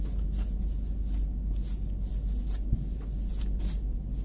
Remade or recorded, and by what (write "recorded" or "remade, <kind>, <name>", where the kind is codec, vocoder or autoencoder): recorded